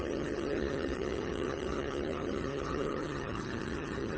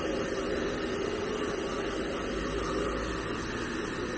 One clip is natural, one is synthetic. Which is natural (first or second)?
second